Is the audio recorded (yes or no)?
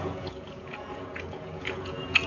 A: no